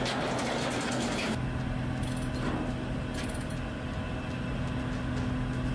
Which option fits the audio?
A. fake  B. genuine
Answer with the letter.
B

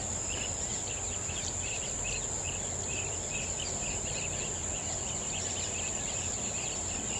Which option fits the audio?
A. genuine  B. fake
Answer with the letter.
A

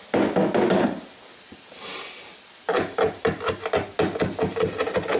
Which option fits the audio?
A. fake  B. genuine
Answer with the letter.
B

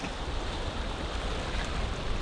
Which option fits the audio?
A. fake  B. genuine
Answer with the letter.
B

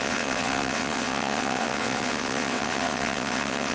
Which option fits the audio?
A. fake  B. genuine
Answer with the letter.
A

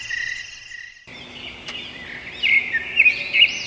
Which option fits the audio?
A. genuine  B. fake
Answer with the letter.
A